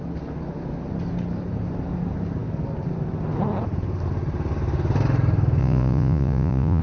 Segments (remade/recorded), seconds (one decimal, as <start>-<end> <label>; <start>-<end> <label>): 0.0-5.6 recorded; 5.6-6.8 remade